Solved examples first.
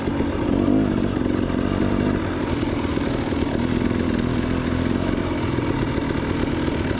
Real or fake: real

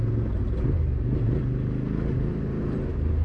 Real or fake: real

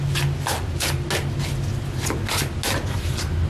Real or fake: real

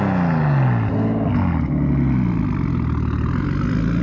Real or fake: real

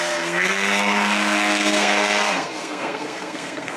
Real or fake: fake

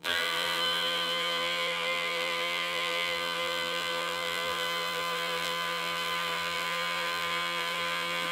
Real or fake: fake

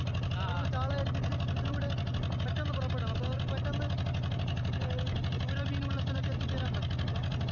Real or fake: real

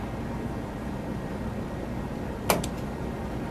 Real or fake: real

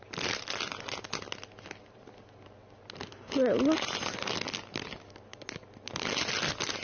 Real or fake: real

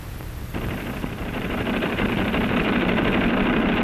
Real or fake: fake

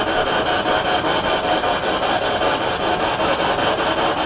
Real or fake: real